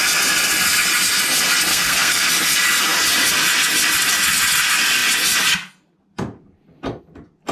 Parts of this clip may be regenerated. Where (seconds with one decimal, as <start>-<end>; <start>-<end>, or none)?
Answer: 1.7-2.3